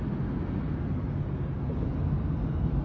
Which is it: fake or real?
real